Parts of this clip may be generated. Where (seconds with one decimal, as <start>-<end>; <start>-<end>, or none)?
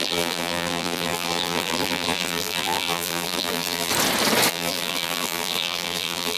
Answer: 0.0-3.9; 4.5-6.4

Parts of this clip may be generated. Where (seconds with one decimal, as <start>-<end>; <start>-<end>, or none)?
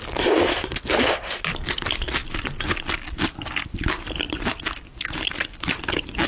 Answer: none